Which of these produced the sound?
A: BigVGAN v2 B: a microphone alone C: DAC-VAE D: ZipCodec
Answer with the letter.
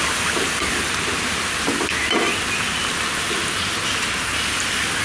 B